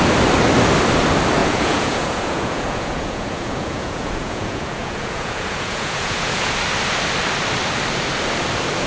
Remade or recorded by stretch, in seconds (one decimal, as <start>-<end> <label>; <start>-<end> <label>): 0.0-1.4 recorded; 1.4-6.6 remade; 6.6-8.9 recorded